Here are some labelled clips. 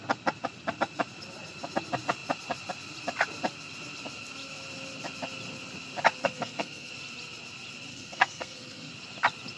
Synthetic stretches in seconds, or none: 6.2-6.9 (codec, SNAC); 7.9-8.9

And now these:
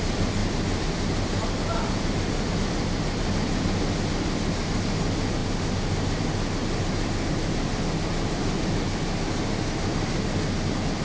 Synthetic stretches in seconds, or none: none

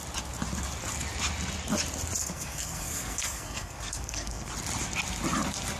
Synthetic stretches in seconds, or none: 2.2-4.5 (codec, SNAC)